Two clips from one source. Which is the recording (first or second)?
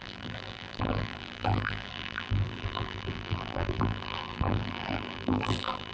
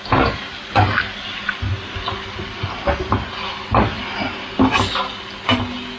second